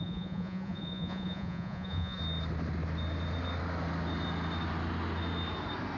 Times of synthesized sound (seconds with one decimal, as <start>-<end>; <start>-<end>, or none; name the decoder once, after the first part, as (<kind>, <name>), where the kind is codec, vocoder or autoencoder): 0.0-2.2 (vocoder, Vocos)